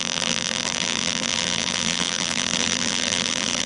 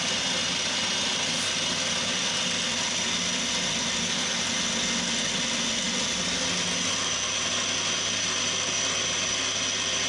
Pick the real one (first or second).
second